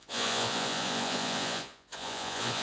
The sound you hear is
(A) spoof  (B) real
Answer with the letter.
A